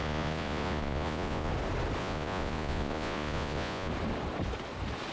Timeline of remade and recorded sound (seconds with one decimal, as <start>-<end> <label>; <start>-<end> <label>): 0.0-1.5 remade; 1.5-2.0 recorded; 2.0-3.9 remade; 3.9-5.1 recorded